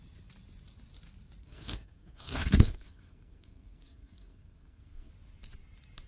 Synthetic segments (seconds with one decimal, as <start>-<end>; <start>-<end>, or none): 1.4-5.1